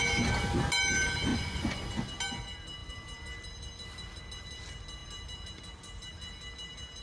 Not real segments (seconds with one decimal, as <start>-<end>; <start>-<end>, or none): 1.3-1.9